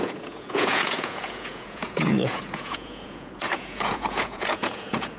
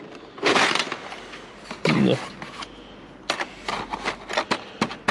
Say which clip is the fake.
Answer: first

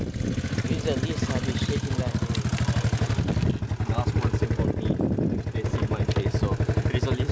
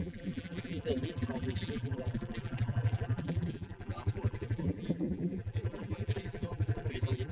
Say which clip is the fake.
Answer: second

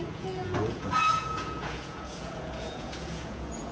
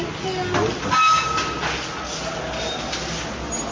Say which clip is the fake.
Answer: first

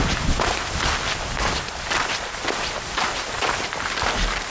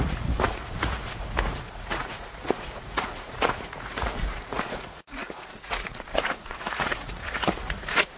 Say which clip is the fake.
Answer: second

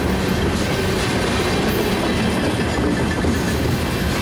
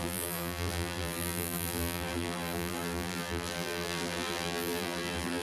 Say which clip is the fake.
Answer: second